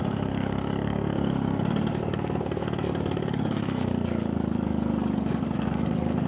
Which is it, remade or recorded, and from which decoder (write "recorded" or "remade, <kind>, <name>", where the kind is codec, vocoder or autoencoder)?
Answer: remade, codec, DAC